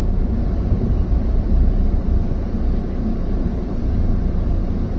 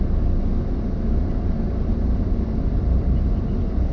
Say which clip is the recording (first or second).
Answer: second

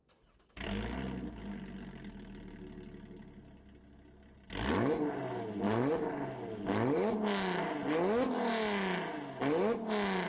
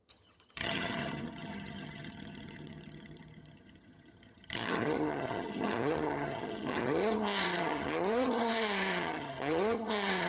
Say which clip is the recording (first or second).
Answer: first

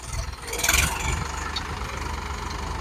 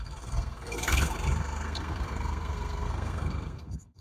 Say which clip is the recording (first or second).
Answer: first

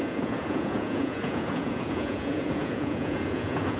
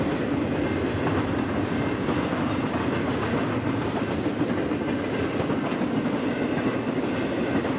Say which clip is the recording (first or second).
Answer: second